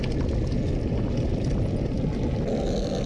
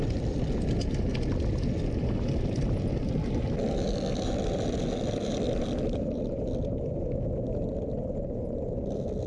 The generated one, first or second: second